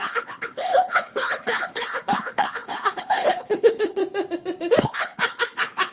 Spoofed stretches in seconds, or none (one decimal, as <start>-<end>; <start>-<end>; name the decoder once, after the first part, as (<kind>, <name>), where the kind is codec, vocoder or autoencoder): 0.0-4.0 (codec, HILCodec); 4.8-5.9